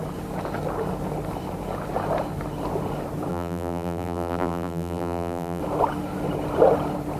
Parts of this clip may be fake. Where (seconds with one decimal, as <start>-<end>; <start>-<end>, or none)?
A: 3.3-5.6